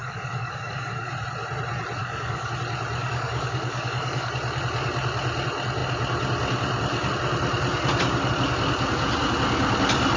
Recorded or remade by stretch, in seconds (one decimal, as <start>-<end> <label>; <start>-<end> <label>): 0.0-1.1 remade; 1.1-2.0 recorded; 2.0-2.5 remade; 2.5-3.0 recorded; 3.0-4.3 remade; 4.3-10.2 recorded